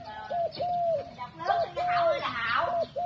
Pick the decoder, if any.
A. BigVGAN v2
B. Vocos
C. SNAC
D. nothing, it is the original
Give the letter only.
D